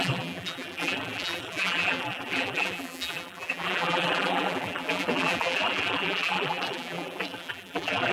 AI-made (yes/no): yes